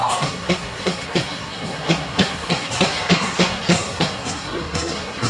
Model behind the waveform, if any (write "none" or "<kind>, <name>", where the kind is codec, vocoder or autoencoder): codec, SNAC